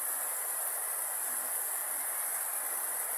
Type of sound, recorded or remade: recorded